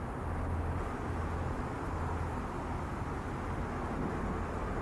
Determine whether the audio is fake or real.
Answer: real